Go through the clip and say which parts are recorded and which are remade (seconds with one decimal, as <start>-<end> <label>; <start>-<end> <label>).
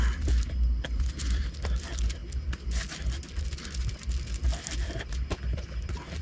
0.0-6.2 recorded